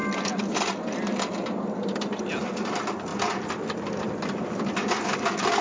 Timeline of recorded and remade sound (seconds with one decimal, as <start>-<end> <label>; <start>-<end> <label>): 0.0-3.1 remade; 3.1-4.0 recorded; 4.0-5.6 remade